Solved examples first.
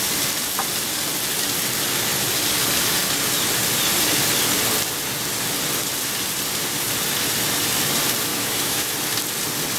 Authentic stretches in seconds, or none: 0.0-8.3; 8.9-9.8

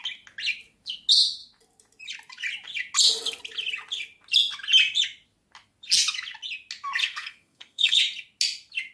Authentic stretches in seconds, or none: 0.0-7.0; 8.0-8.9

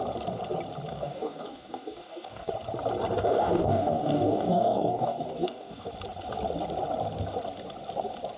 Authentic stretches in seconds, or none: 0.0-0.9; 2.5-3.2; 5.9-8.4